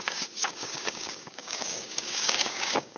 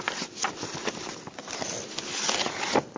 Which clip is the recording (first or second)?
second